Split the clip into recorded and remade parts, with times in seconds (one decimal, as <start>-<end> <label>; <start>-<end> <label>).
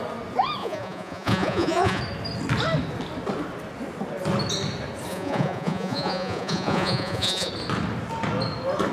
0.0-0.6 recorded; 0.6-2.0 remade; 2.0-5.1 recorded; 5.1-7.5 remade; 7.5-8.9 recorded